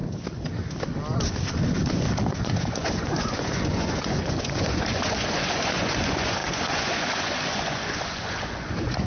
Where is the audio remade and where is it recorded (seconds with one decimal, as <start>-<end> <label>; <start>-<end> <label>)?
0.0-2.3 recorded; 2.3-9.1 remade